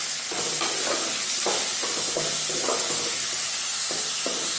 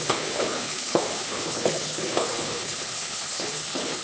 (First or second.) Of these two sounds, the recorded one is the first